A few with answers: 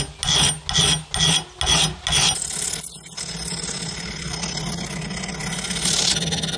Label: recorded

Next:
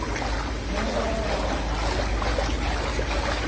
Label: recorded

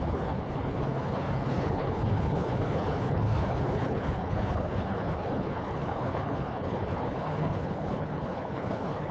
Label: remade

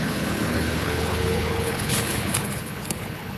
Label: remade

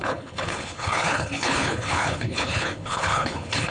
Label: remade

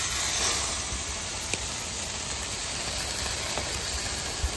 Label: recorded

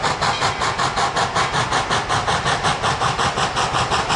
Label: recorded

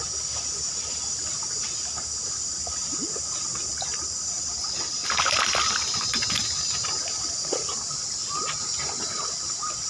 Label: recorded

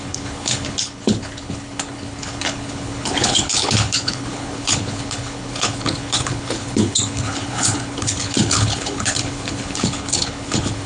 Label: remade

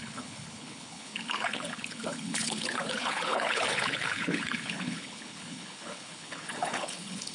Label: remade